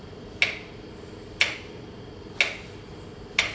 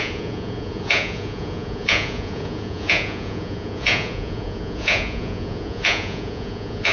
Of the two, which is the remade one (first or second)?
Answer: second